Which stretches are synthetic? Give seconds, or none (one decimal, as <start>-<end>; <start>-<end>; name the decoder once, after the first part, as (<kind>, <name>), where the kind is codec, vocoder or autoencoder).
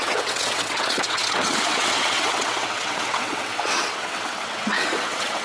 0.0-5.4 (vocoder, WaveNeXt)